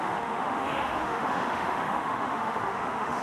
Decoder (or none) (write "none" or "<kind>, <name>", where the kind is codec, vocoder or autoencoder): autoencoder, DAC-VAE